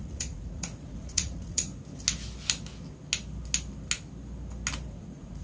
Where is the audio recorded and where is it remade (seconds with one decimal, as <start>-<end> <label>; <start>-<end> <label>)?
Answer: 0.0-1.7 remade; 1.7-4.9 recorded; 4.9-5.4 remade